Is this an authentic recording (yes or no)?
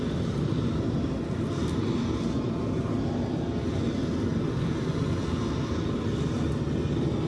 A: yes